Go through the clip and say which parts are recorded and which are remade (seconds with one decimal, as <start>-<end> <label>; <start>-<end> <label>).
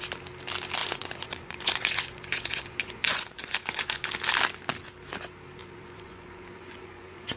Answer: 0.0-0.8 recorded; 0.8-4.1 remade; 4.1-5.6 recorded; 5.6-7.4 remade